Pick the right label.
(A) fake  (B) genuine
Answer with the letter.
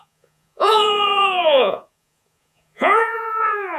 A